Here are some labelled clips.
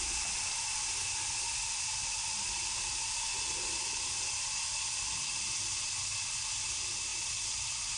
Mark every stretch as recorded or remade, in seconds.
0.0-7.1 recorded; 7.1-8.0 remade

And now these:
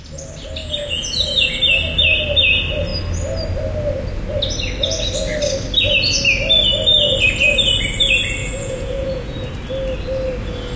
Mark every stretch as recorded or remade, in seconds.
0.0-0.6 recorded; 0.6-1.6 remade; 1.6-8.4 recorded; 8.4-9.5 remade; 9.5-10.8 recorded

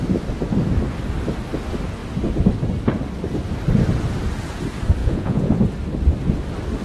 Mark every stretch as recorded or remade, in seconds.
0.0-5.0 recorded; 5.0-5.6 remade; 5.6-6.8 recorded